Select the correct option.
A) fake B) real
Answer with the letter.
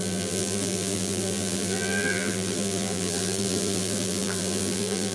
A